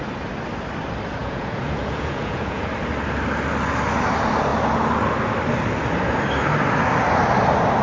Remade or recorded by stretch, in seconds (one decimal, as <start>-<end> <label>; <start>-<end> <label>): 0.0-1.2 recorded; 1.2-2.7 remade; 2.7-7.8 recorded